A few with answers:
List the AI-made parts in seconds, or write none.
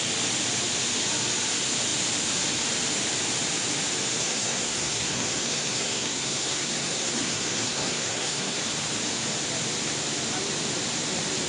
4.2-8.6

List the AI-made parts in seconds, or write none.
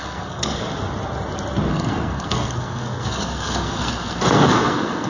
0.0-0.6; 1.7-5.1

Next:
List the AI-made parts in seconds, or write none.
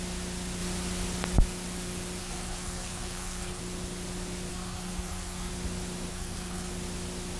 2.2-3.6; 4.5-5.5; 6.1-6.7